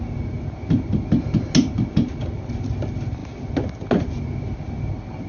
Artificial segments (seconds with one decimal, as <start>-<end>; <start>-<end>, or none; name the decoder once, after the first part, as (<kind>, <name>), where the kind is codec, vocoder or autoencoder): none